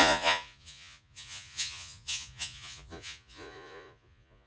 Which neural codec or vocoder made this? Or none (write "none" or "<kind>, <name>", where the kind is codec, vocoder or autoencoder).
vocoder, Vocos